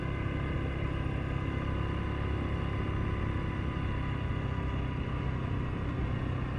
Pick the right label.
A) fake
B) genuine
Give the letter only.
B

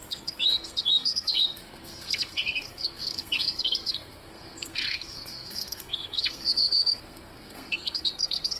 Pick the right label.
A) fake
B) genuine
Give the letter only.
A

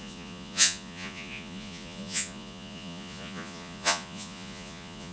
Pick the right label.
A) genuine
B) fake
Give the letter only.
B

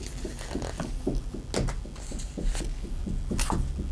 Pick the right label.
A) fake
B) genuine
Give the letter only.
B